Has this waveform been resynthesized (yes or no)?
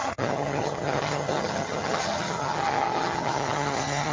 yes